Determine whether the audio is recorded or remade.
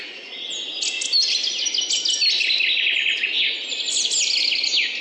recorded